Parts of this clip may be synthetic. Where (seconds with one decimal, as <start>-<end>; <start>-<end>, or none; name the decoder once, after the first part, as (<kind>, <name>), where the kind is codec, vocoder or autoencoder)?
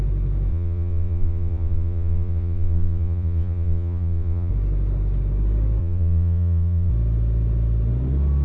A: 0.5-4.5 (vocoder, Vocos); 5.8-6.9